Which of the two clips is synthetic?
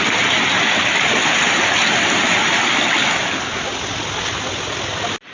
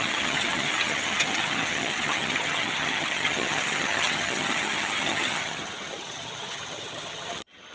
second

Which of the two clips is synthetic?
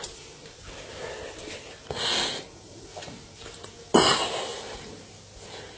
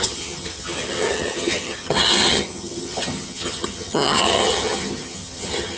second